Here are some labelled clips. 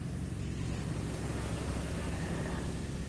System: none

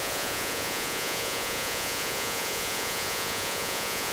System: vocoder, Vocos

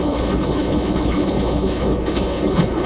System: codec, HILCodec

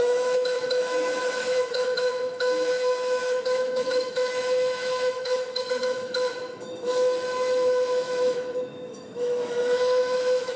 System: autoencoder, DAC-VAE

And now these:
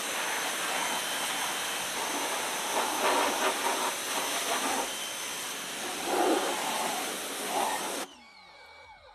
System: none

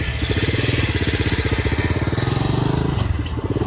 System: none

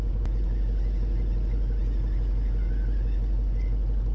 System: none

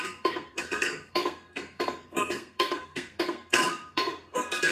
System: codec, SNAC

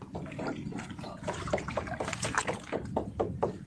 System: none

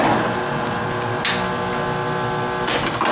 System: none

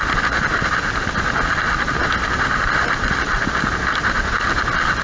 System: none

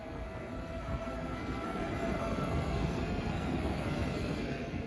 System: codec, SNAC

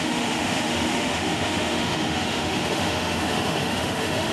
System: autoencoder, DAC-VAE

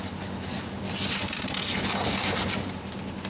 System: none